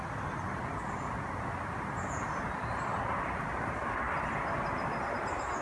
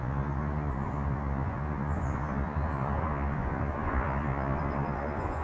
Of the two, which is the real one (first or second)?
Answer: first